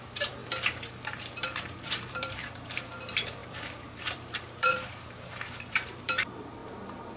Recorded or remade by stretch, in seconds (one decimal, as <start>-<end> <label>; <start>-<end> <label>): 0.0-0.4 remade; 0.4-2.1 recorded; 2.1-6.6 remade; 6.6-7.2 recorded